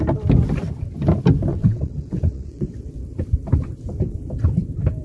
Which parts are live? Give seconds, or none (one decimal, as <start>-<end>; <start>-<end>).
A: 0.0-1.5; 2.9-5.0